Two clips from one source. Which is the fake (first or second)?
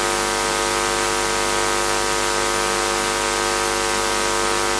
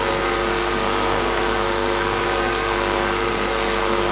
second